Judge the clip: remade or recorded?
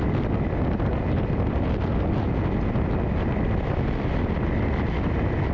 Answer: recorded